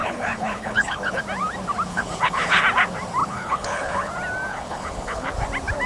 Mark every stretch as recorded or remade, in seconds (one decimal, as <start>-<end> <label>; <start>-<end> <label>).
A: 0.0-1.2 remade; 1.2-1.9 recorded; 1.9-2.6 remade; 2.6-3.2 recorded; 3.2-4.1 remade; 4.1-4.5 recorded; 4.5-5.3 remade; 5.3-5.9 recorded